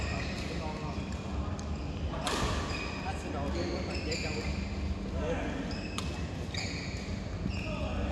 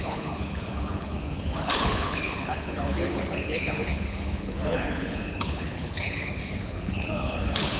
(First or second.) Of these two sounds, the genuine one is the first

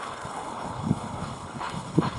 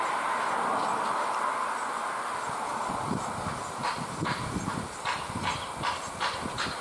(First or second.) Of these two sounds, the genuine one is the second